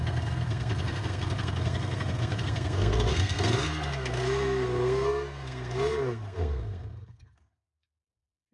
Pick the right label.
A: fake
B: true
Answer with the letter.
A